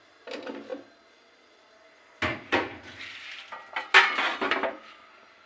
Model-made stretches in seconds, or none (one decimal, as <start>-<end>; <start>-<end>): 2.3-3.0